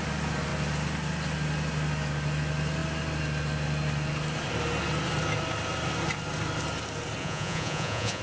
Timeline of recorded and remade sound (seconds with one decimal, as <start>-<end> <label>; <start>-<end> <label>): 0.0-7.2 recorded; 7.2-8.2 remade

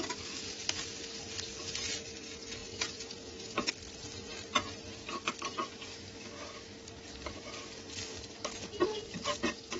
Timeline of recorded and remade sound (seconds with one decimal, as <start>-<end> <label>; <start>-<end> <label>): 0.0-2.6 recorded; 2.6-3.7 remade; 3.7-9.8 recorded

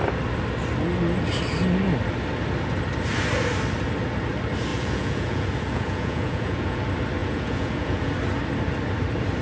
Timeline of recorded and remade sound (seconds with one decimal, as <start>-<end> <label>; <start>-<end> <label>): 0.0-4.7 recorded; 4.7-6.8 remade; 6.8-7.2 recorded; 7.2-8.1 remade; 8.1-9.4 recorded

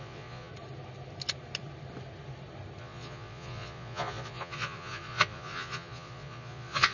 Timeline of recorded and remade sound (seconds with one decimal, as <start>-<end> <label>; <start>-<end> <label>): 0.0-0.5 remade; 0.5-2.8 recorded; 2.8-6.9 remade

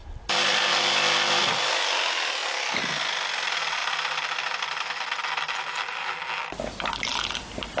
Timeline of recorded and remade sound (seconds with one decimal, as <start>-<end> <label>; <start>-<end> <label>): 0.0-7.8 recorded

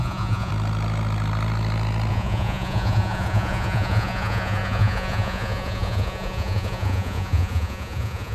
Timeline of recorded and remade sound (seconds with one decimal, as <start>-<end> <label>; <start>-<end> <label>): 0.0-0.5 remade; 0.5-2.1 recorded; 2.1-8.3 remade

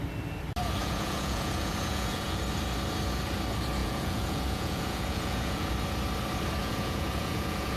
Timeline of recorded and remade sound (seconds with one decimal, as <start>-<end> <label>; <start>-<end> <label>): 0.0-0.8 recorded; 0.8-2.4 remade; 2.4-3.8 recorded; 3.8-5.7 remade; 5.7-6.6 recorded; 6.6-7.8 remade